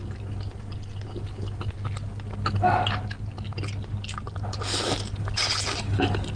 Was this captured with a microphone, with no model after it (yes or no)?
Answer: yes